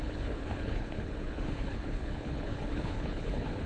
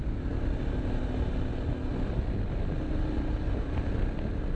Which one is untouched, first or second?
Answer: second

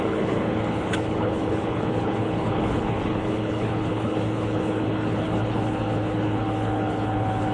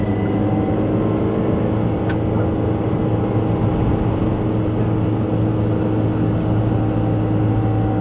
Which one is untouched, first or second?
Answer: second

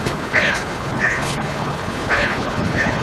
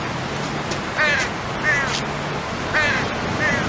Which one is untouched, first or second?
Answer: second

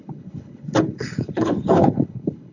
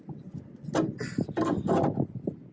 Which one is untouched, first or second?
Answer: second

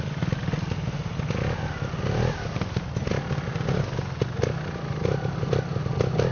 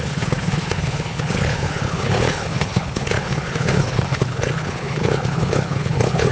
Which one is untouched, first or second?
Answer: first